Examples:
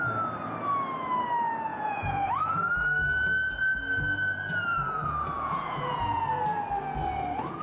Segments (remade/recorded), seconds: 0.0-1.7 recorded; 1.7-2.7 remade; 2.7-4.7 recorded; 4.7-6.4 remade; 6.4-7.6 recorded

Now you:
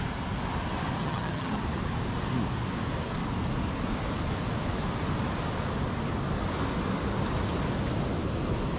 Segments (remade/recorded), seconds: 0.0-1.0 recorded; 1.0-1.6 remade; 1.6-8.8 recorded

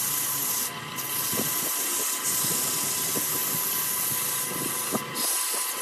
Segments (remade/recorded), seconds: 0.0-5.8 recorded

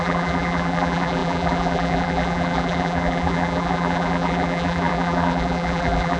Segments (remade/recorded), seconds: 0.0-6.2 remade

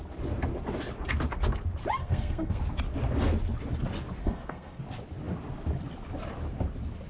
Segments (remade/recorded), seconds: 0.0-2.0 recorded; 2.0-2.6 remade; 2.6-4.2 recorded; 4.2-4.8 remade; 4.8-7.1 recorded